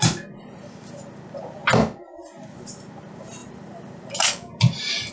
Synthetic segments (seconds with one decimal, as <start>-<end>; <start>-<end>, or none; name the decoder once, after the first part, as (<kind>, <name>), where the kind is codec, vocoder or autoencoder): 3.4-5.1 (vocoder, BigVGAN v2)